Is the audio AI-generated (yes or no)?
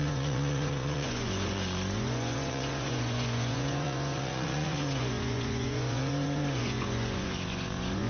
yes